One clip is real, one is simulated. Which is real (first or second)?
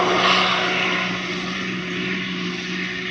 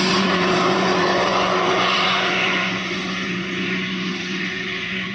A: first